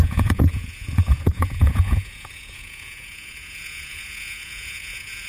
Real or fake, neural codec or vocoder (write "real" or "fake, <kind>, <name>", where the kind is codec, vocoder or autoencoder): fake, vocoder, Vocos